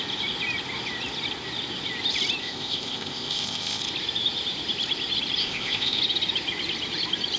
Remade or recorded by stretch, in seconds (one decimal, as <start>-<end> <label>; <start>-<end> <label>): 0.0-2.4 recorded; 2.4-3.8 remade; 3.8-5.4 recorded; 5.4-6.0 remade; 6.0-7.4 recorded